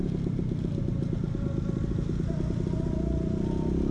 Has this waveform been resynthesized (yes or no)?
no